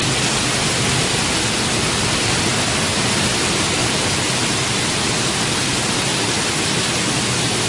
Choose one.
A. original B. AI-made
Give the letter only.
A